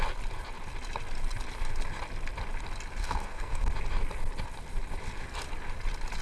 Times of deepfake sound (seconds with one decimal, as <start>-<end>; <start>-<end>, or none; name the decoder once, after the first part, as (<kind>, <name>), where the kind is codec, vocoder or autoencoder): 3.0-3.7 (codec, SNAC)